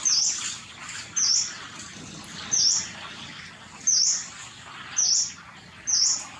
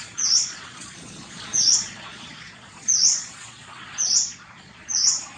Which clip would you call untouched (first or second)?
first